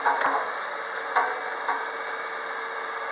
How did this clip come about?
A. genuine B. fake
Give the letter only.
A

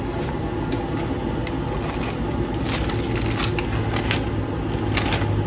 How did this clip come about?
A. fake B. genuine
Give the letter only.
B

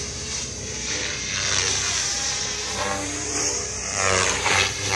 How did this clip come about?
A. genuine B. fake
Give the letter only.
B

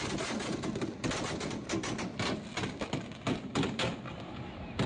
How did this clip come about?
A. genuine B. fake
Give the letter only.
A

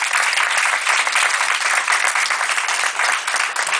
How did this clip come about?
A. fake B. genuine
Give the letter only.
A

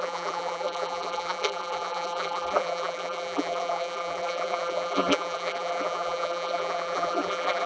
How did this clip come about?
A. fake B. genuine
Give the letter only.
A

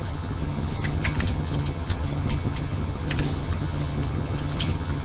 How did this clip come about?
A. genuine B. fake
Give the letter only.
B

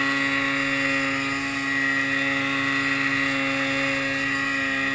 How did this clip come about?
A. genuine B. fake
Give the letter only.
A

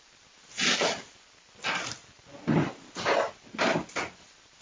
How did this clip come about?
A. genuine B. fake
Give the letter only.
A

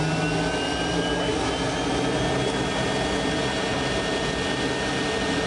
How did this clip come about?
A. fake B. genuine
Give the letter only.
B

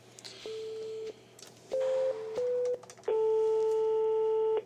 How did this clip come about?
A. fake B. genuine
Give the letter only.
B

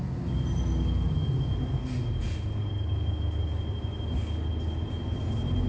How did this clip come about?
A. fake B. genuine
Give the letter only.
B